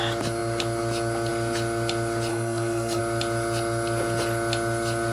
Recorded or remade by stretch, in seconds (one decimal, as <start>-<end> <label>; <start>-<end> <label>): 0.0-2.3 recorded; 2.3-3.0 remade; 3.0-5.1 recorded